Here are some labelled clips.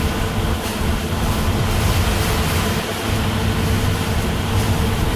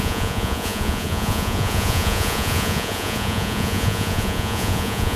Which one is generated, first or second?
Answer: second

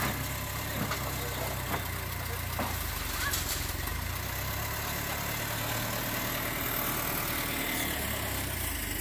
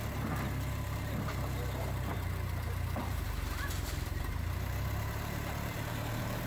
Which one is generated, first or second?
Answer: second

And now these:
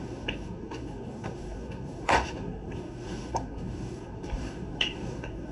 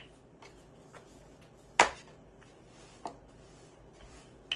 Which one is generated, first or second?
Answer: first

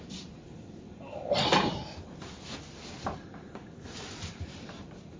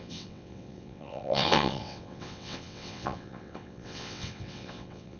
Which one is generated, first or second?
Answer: second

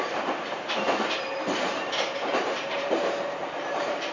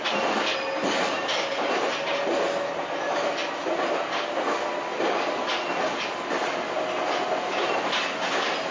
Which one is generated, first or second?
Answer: first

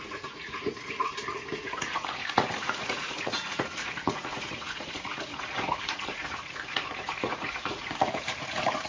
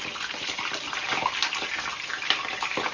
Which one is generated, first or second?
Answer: first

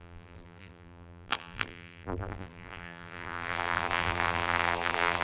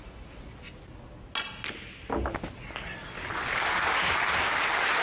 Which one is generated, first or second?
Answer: first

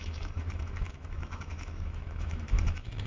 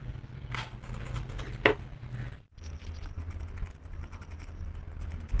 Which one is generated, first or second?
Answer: first